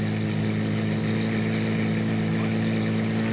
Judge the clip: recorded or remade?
recorded